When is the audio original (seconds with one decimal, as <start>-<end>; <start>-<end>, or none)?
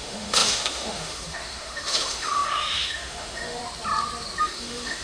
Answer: 3.6-4.4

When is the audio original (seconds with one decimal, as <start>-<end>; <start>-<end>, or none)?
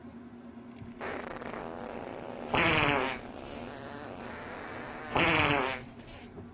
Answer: 0.0-6.5